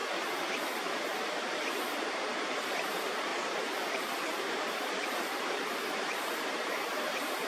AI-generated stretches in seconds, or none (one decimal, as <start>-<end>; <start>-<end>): 1.5-3.3; 3.9-7.5